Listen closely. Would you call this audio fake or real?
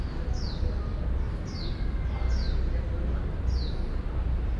real